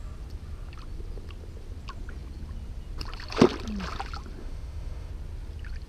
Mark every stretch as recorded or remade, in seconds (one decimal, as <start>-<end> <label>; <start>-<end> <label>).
0.0-4.4 recorded; 4.4-5.1 remade; 5.1-5.9 recorded